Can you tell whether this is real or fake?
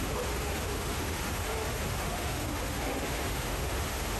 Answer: fake